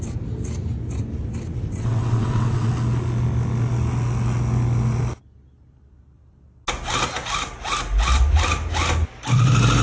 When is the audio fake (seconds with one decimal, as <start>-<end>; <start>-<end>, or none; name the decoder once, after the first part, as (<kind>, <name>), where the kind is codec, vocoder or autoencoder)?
1.5-2.7 (vocoder, WaveNeXt)